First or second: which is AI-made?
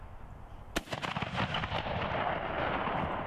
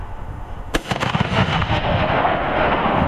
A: second